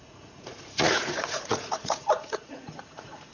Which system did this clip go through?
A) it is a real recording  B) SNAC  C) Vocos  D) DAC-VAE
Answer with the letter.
C